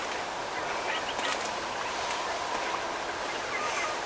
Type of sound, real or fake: real